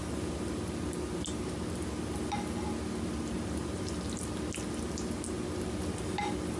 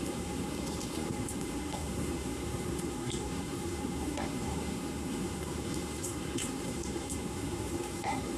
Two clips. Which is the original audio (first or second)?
first